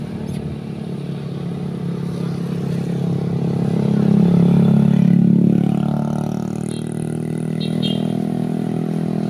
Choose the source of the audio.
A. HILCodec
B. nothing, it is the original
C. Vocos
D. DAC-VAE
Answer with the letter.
B